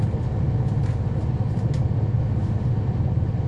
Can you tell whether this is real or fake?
real